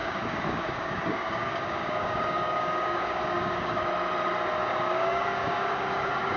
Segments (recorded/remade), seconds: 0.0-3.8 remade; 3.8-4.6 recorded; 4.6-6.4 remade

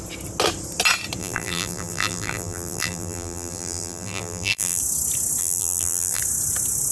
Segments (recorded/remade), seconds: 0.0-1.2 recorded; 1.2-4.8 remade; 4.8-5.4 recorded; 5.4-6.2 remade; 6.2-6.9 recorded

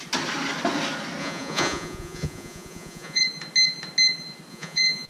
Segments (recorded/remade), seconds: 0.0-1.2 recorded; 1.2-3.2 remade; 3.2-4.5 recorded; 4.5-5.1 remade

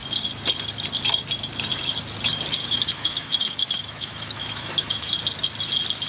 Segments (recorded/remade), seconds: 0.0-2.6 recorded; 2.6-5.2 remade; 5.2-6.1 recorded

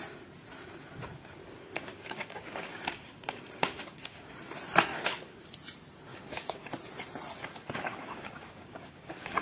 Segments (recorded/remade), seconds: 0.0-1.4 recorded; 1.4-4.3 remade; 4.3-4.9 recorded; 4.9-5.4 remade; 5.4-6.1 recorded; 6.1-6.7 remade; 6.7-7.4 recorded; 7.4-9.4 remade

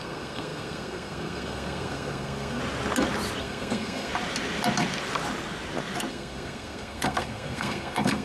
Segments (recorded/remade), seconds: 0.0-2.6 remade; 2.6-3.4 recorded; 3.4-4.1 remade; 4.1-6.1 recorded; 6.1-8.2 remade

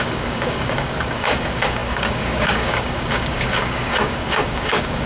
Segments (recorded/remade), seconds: 0.0-5.1 remade